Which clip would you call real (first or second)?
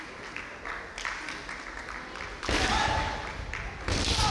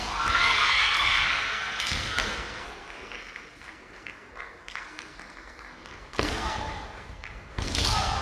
first